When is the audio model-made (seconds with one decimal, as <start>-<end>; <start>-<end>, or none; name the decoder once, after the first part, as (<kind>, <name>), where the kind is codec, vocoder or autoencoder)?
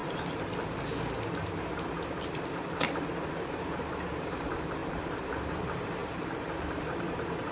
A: 3.4-7.5 (vocoder, BigVGAN v2)